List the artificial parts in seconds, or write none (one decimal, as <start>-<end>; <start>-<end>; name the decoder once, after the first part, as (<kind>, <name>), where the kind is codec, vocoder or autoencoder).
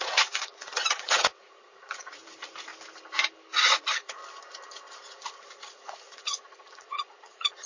0.0-2.7 (vocoder, Vocos); 3.7-4.2; 5.1-7.7